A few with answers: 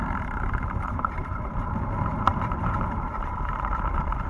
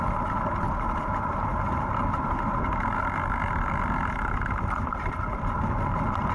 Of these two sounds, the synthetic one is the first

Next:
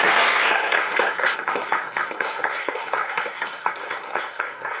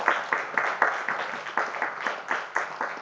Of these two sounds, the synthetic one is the first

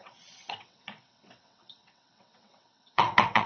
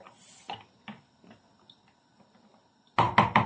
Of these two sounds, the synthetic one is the first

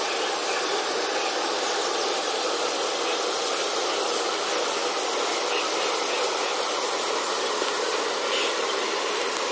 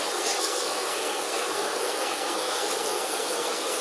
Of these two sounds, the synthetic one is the second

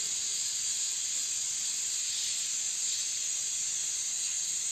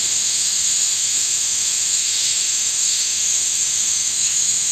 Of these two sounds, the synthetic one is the second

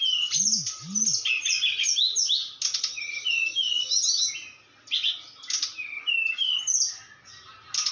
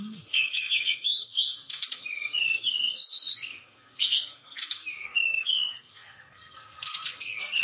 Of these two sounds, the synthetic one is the second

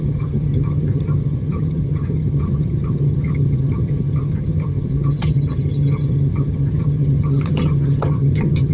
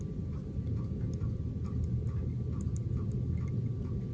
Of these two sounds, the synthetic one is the first